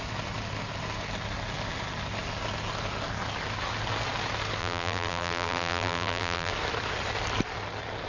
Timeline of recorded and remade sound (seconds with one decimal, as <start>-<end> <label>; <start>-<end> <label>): 0.0-4.6 recorded; 4.6-6.5 remade; 6.5-8.1 recorded